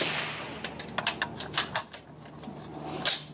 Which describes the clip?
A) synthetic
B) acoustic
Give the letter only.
B